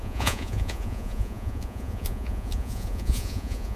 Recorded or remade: remade